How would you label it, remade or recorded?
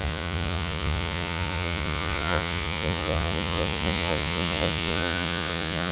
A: remade